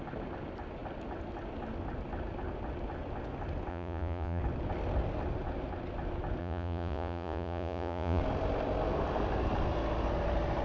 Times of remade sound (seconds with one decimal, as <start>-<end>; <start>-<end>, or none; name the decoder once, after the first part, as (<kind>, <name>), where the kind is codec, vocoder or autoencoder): 3.7-4.4 (vocoder, Vocos); 6.4-8.2